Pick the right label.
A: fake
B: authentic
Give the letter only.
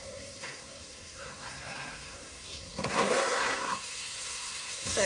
A